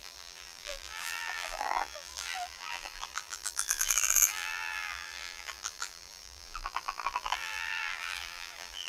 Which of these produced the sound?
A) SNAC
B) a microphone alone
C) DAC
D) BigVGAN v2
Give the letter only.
D